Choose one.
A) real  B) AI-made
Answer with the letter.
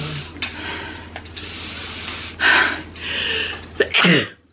A